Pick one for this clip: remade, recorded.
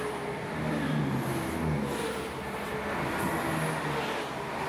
recorded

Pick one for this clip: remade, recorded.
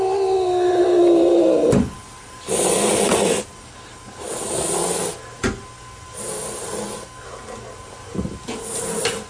recorded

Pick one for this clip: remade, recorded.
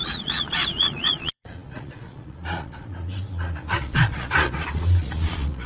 remade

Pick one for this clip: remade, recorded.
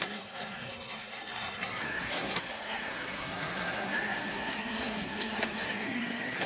remade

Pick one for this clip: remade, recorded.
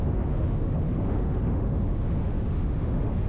remade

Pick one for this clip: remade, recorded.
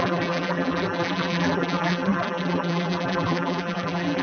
remade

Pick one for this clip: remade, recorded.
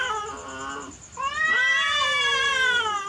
recorded